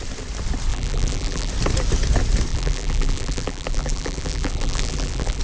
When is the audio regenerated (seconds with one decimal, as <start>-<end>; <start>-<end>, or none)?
0.7-1.5; 2.5-5.4